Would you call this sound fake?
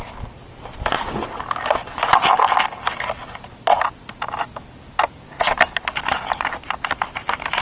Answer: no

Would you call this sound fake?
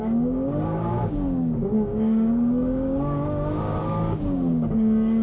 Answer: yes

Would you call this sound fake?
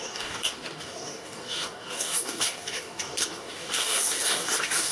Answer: yes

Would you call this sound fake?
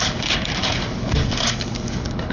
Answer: yes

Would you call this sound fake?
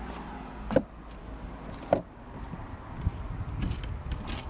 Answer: no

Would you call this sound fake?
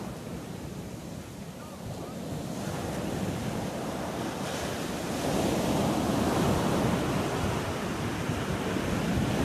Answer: no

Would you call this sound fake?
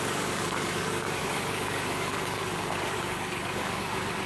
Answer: yes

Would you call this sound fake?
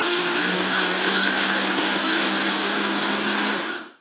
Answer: yes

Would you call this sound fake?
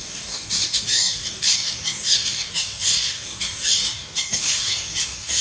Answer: yes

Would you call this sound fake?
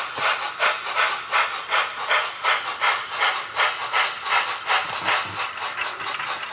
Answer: no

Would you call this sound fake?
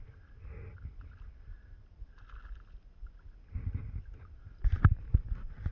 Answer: no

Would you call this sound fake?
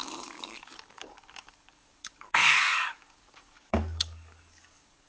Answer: yes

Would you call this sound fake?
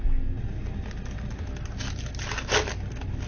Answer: no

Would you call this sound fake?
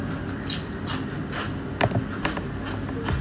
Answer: no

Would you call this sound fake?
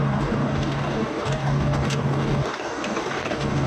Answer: yes